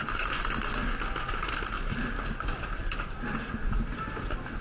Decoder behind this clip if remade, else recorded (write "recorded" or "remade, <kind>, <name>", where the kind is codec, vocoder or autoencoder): recorded